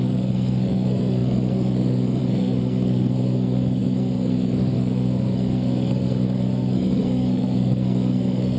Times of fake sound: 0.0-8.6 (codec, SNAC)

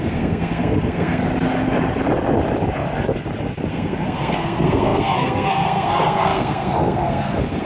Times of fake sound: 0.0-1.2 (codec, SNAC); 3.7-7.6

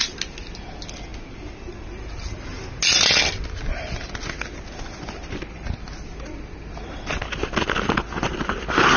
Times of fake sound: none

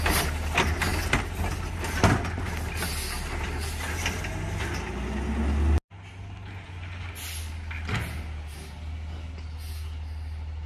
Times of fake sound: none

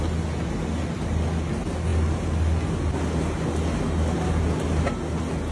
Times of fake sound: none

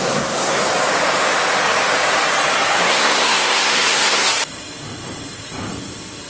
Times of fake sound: 0.0-0.6 (codec, SNAC); 2.8-4.3

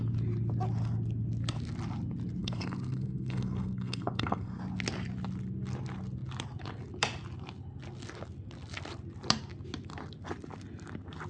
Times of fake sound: 2.4-4.6 (codec, SNAC)

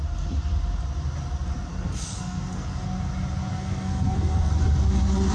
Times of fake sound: 1.7-2.8 (codec, SNAC); 3.5-4.5